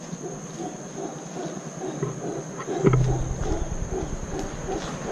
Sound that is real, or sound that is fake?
real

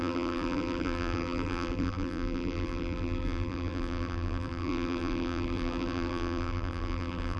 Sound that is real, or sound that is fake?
fake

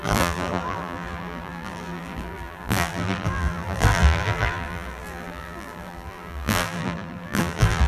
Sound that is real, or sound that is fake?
fake